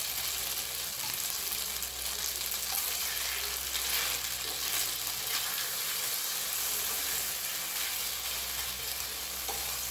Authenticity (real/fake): real